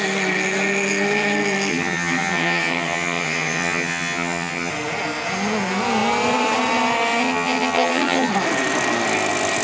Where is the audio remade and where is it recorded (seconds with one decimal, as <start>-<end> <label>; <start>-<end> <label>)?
0.0-1.7 recorded; 1.7-4.7 remade; 4.7-7.2 recorded; 7.2-8.3 remade; 8.3-9.6 recorded